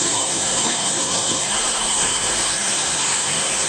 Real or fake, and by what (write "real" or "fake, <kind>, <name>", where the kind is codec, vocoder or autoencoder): fake, codec, SNAC